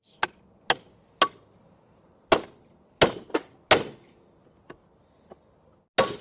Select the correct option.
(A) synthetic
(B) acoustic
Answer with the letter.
B